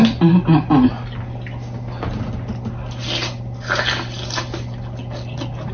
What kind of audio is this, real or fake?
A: real